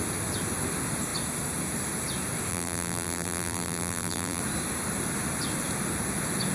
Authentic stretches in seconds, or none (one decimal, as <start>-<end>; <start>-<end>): 0.0-2.5; 4.4-6.5